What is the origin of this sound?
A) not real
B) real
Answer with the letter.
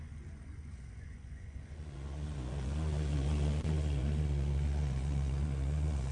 A